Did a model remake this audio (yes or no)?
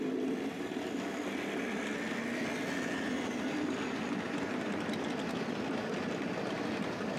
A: no